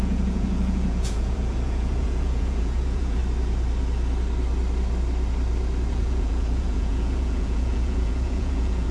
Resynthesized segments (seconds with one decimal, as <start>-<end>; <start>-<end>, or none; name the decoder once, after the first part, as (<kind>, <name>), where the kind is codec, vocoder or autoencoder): 0.0-3.2 (vocoder, Vocos); 5.9-8.9